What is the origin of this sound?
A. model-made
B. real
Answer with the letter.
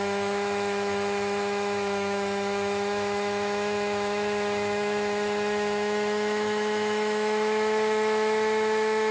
A